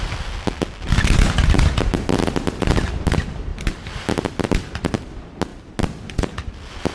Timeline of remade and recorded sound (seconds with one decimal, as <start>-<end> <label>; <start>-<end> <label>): 0.0-6.9 recorded